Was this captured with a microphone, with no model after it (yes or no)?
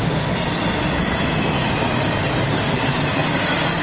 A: yes